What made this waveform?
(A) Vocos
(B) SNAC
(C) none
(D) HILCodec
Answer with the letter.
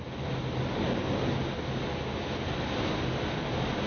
C